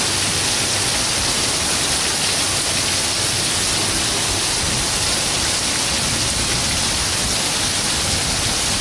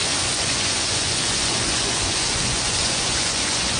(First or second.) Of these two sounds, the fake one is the second